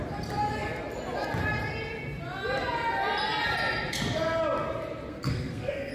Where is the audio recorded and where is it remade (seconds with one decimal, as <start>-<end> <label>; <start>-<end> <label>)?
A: 0.0-5.1 recorded; 5.1-5.9 remade